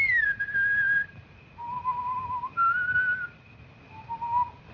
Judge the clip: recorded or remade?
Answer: recorded